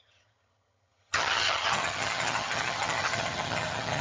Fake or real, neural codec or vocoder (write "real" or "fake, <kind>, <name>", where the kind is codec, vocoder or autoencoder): fake, vocoder, HiFi-GAN